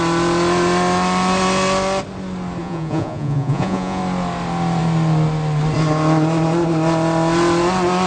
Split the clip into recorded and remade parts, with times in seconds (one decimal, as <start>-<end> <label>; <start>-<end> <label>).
0.0-2.6 recorded; 2.6-4.0 remade; 4.0-8.1 recorded